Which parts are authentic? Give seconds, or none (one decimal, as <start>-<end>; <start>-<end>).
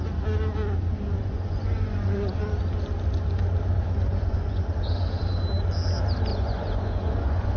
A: 0.0-1.2; 2.4-4.0; 4.7-6.3